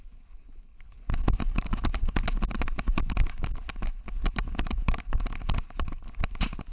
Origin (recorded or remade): recorded